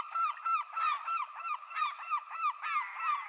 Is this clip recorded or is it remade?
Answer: recorded